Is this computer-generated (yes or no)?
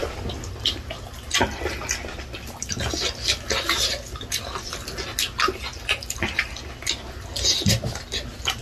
no